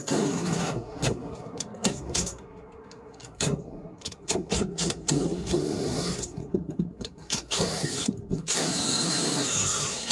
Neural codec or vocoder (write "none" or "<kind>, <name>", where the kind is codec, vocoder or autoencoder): codec, SNAC